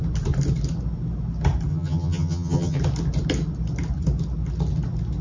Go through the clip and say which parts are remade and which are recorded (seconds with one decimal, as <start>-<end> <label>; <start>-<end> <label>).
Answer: 0.0-1.7 recorded; 1.7-2.8 remade; 2.8-5.2 recorded